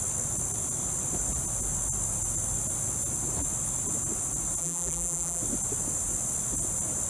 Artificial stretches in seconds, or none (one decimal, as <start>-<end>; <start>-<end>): 4.6-5.4